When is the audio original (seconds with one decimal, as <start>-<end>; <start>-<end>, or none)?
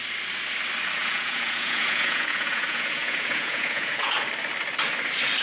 0.0-1.0; 4.2-5.4